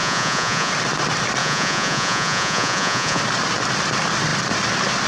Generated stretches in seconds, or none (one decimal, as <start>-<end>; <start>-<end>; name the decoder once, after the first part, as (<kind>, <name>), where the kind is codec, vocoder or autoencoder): 0.0-0.7 (vocoder, Vocos); 1.4-3.2